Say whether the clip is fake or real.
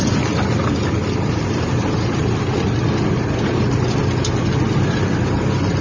real